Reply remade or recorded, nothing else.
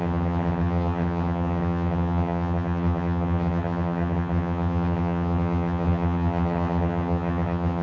remade